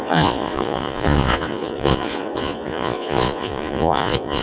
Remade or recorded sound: remade